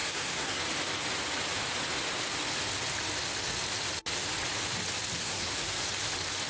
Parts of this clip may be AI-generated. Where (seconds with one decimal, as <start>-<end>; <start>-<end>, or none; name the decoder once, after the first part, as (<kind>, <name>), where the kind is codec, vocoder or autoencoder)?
0.0-0.6 (codec, SNAC); 5.2-5.8